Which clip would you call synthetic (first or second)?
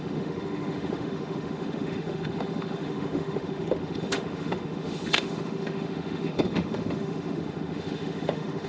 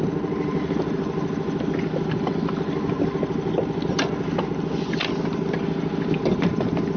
first